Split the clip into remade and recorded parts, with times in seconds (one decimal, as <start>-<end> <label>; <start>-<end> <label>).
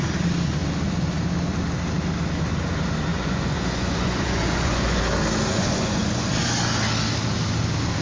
0.0-3.1 recorded; 3.1-5.0 remade; 5.0-5.5 recorded; 5.5-6.3 remade; 6.3-8.0 recorded